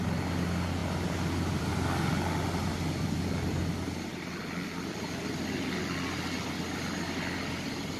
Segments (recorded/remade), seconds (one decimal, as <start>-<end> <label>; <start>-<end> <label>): 0.0-8.0 recorded